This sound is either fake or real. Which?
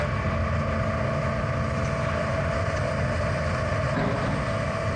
real